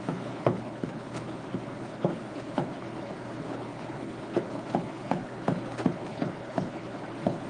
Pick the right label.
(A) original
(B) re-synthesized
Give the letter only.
B